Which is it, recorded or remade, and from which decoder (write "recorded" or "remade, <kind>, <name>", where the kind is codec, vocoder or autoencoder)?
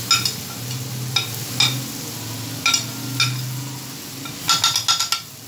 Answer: recorded